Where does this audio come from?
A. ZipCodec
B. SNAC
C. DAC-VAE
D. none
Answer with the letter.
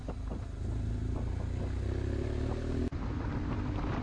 D